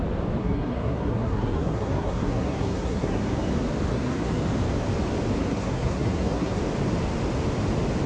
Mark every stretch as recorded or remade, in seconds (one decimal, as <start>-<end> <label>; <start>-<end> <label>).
0.0-0.4 recorded; 0.4-3.5 remade; 3.5-3.9 recorded; 3.9-4.4 remade; 4.4-5.4 recorded; 5.4-6.6 remade; 6.6-8.1 recorded